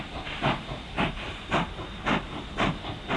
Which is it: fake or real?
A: real